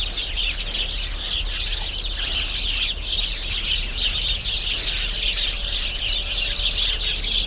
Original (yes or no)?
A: yes